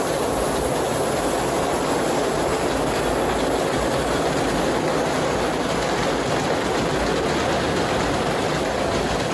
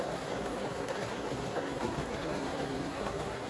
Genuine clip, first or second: first